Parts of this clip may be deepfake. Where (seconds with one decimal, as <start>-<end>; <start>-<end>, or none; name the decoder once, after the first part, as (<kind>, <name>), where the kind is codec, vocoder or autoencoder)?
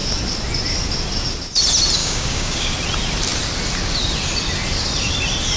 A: 2.0-2.7 (codec, DAC)